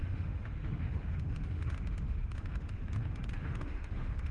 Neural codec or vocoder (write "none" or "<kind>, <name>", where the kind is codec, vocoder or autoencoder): autoencoder, DAC-VAE